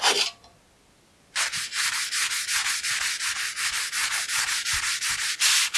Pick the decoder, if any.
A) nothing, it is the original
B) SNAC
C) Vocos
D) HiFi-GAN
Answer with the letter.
A